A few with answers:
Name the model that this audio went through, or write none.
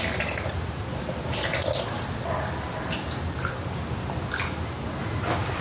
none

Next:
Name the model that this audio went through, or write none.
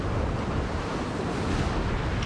none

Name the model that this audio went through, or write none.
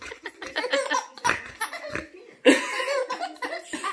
vocoder, Vocos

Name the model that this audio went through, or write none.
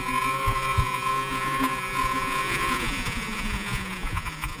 vocoder, Vocos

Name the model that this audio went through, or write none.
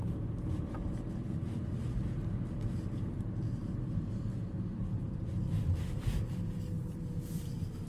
none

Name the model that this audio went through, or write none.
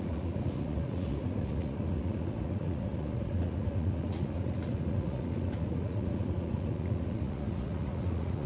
vocoder, Vocos